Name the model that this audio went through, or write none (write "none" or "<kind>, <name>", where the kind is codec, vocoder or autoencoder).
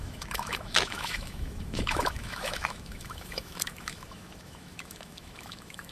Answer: autoencoder, DAC-VAE